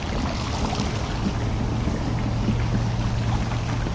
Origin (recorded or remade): recorded